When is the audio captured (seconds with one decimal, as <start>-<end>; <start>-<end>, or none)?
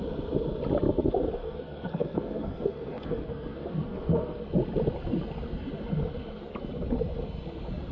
0.0-1.4; 4.4-7.9